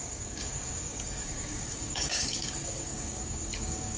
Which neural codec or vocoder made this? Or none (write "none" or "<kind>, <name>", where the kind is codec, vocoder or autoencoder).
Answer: codec, DAC